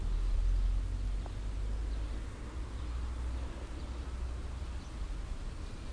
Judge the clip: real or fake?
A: real